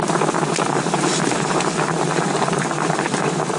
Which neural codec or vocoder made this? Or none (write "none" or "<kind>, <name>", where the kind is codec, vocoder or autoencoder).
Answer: vocoder, BigVGAN v2